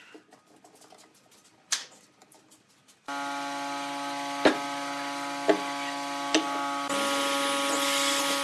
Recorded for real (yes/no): yes